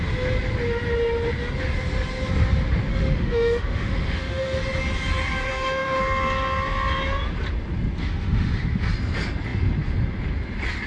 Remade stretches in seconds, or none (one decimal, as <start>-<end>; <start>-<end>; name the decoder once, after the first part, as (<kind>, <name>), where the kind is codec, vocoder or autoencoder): 2.9-4.6 (autoencoder, DAC-VAE); 5.5-6.0; 8.0-8.9